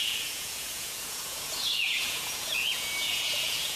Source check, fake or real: fake